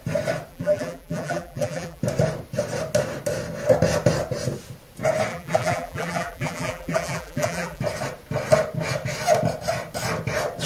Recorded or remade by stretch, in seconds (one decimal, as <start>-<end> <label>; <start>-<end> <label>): 0.0-0.5 recorded; 0.5-2.0 remade; 2.0-5.3 recorded; 5.3-7.8 remade; 7.8-10.7 recorded